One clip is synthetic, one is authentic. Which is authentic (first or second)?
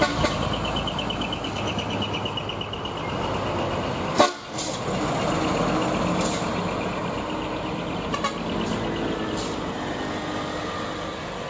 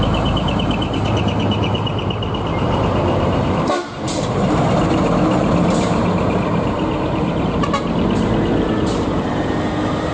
first